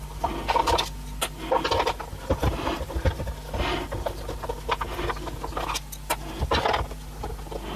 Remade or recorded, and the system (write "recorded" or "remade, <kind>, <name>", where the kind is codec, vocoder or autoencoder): recorded